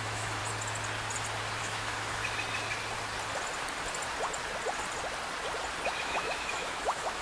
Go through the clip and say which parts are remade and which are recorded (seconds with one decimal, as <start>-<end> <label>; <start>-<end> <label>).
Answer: 0.0-0.4 remade; 0.4-1.6 recorded; 1.6-2.2 remade; 2.2-6.0 recorded; 6.0-7.2 remade